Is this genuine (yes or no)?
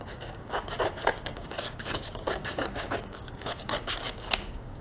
no